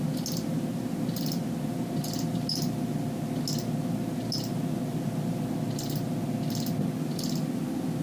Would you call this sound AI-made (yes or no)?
no